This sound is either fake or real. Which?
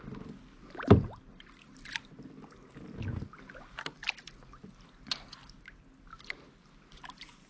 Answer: real